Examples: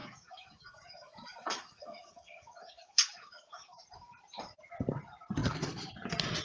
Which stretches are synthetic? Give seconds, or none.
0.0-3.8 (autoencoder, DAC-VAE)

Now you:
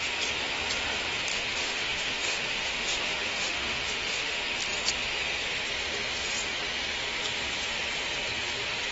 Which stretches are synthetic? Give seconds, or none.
1.3-4.3 (autoencoder, DAC-VAE)

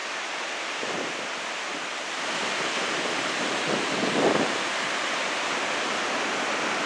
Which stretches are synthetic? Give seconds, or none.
none

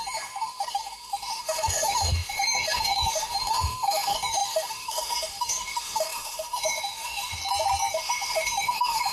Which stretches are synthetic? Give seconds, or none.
0.0-7.4 (autoencoder, DAC-VAE); 7.9-9.1

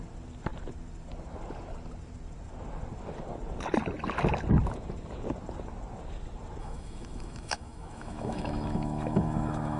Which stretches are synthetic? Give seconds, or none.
6.6-9.8 (autoencoder, DAC-VAE)

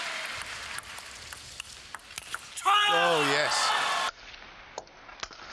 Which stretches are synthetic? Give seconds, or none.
none

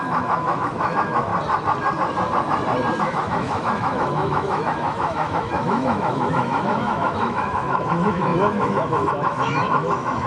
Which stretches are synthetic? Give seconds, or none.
0.0-1.3 (autoencoder, DAC-VAE); 3.0-10.3